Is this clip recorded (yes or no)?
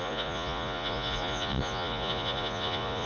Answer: no